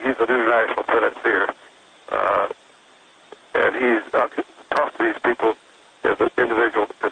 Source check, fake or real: real